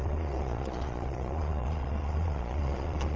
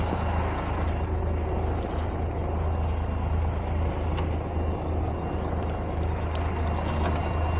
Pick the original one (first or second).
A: second